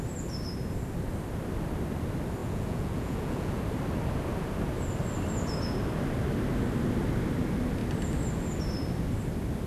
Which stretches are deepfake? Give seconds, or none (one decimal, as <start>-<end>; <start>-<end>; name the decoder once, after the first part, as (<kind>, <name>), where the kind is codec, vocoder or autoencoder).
2.4-3.6 (vocoder, Vocos)